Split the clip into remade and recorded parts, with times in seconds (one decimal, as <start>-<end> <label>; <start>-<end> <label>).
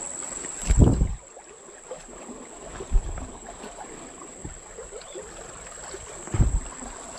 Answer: 0.0-7.2 recorded